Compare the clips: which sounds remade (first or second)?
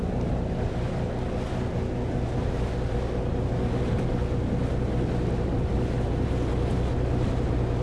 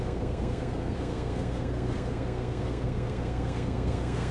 second